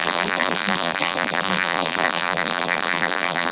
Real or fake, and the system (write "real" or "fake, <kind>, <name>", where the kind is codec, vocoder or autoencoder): fake, vocoder, BigVGAN v2